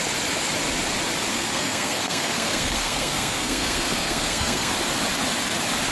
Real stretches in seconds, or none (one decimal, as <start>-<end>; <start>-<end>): 0.0-1.3; 4.7-5.9

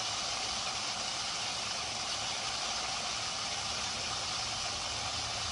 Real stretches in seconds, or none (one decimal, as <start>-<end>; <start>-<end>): 0.0-5.5

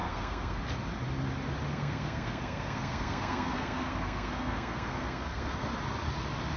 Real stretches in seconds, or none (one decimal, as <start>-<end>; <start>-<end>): 0.6-1.7; 5.7-6.6

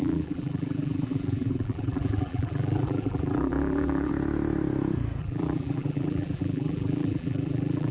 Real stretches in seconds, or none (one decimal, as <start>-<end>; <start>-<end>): 4.1-5.2